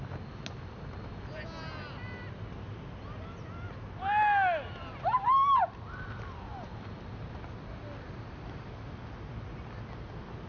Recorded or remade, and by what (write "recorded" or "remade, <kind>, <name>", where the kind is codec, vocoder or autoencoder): recorded